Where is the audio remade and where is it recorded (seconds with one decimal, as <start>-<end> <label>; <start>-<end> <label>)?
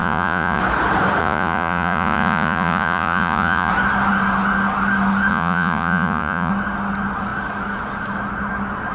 0.0-0.6 remade; 0.6-1.2 recorded; 1.2-3.7 remade; 3.7-5.3 recorded; 5.3-6.5 remade; 6.5-8.9 recorded